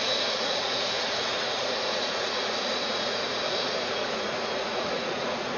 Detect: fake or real fake